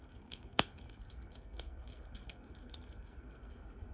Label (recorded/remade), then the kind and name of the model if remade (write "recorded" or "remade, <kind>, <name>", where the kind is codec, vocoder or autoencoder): remade, codec, SNAC